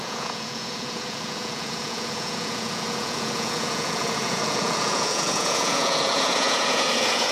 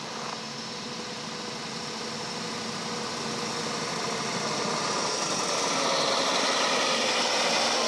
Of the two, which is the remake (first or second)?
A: first